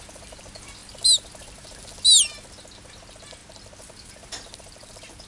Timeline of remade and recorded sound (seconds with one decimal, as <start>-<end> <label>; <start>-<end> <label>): 0.0-5.3 recorded

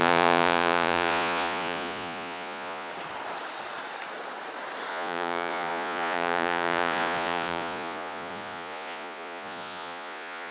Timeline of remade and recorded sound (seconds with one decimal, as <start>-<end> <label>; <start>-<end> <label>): 0.0-2.9 remade; 2.9-4.9 recorded; 4.9-10.5 remade

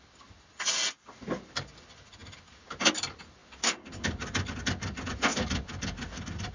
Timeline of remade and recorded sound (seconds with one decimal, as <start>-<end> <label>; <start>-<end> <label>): 0.0-6.5 recorded

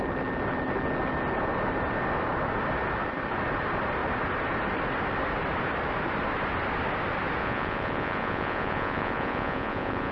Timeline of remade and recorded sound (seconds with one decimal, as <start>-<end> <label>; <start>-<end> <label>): 0.0-7.4 recorded; 7.4-10.1 remade